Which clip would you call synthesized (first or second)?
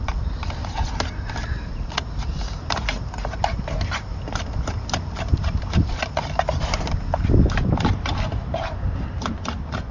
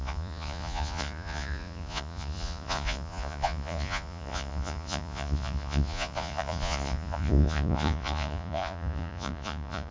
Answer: second